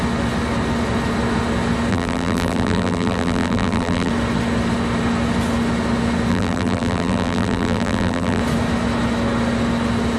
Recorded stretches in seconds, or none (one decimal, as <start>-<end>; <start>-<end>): 0.0-1.9; 4.1-6.3; 8.4-10.2